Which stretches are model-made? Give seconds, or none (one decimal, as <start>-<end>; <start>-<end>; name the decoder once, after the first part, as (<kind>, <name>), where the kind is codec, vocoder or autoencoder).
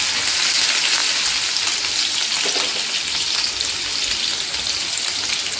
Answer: none